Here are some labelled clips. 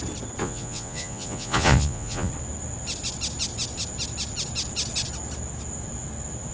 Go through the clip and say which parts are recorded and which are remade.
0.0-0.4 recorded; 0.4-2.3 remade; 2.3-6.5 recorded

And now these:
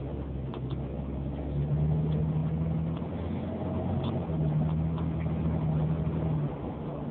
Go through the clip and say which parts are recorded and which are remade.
0.0-7.1 recorded

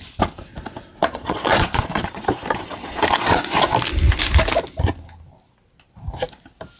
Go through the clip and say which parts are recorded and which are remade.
0.0-1.0 recorded; 1.0-2.2 remade; 2.2-2.7 recorded; 2.7-3.5 remade; 3.5-6.8 recorded

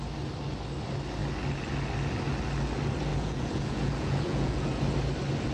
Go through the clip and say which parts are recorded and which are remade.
0.0-3.1 recorded; 3.1-4.8 remade; 4.8-5.5 recorded